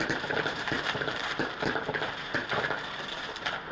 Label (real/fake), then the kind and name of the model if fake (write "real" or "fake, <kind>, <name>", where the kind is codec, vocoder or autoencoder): fake, vocoder, BigVGAN v2